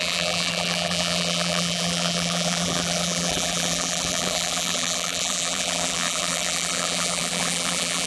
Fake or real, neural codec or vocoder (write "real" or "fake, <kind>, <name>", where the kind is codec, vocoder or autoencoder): fake, vocoder, BigVGAN v2